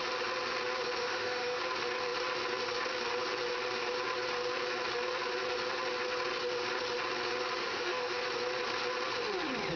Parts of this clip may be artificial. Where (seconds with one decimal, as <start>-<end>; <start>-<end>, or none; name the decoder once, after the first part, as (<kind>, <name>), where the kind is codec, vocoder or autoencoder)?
1.0-1.6 (autoencoder, DAC-VAE); 7.6-8.2